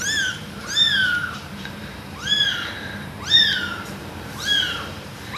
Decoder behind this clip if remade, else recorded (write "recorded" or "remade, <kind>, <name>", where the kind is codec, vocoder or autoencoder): remade, vocoder, BigVGAN v2